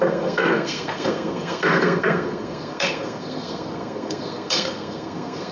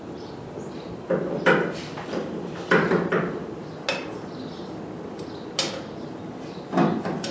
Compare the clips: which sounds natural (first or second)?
second